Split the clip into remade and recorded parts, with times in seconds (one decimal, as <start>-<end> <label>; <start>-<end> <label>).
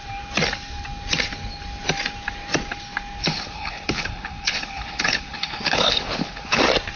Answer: 0.0-3.2 recorded; 3.2-6.6 remade; 6.6-7.0 recorded